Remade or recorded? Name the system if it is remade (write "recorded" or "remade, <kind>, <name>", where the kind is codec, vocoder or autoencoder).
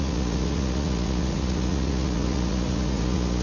remade, vocoder, Vocos